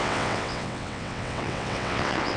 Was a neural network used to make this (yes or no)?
yes